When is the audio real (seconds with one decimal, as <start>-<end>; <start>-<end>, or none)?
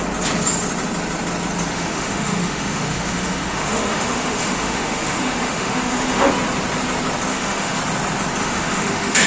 0.0-1.7; 6.3-7.3; 7.8-8.4